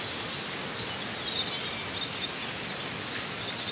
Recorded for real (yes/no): yes